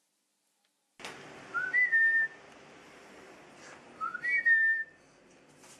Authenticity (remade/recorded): recorded